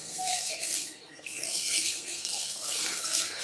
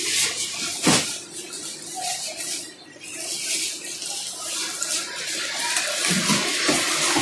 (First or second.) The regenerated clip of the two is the first